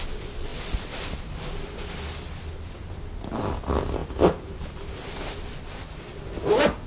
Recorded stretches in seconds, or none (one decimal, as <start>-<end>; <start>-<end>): 0.0-6.9